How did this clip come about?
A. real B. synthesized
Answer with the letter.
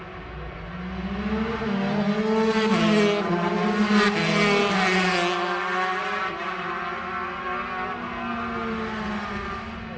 A